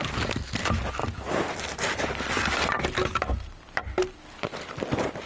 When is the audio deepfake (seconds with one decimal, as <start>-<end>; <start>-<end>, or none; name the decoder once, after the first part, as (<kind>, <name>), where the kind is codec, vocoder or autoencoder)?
none